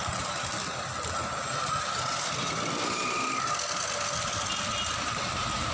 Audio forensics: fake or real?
real